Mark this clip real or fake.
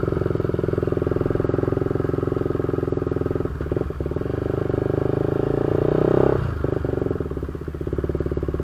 real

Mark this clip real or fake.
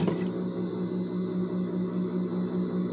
real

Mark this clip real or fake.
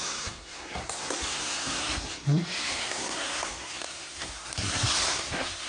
fake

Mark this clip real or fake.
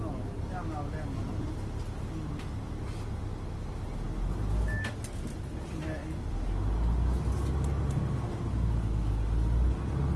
real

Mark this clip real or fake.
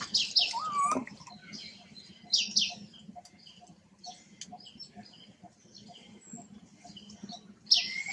real